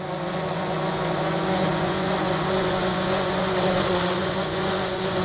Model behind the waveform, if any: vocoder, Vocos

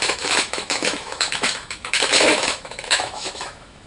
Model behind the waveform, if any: autoencoder, DAC-VAE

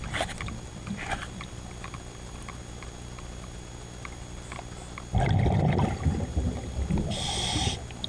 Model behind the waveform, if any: none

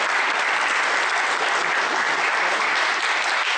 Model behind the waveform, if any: vocoder, BigVGAN v2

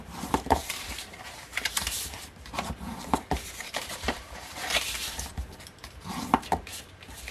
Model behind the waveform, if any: vocoder, BigVGAN v2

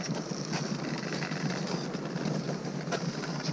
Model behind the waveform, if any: none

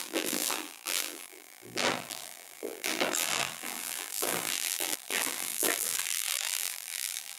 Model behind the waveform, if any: vocoder, BigVGAN v2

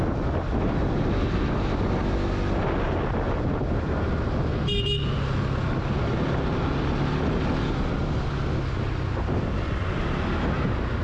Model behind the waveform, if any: none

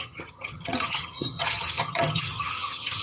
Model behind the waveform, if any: vocoder, HiFi-GAN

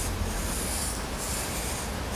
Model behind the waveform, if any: none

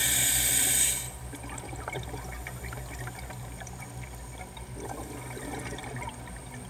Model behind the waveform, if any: none